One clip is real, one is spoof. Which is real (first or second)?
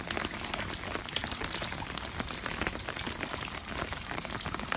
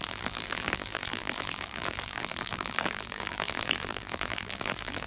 first